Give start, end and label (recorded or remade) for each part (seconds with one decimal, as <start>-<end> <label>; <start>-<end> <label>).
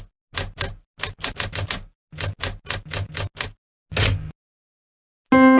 0.0-5.6 recorded